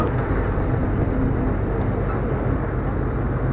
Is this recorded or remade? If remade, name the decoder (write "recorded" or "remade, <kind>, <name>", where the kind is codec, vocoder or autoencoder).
recorded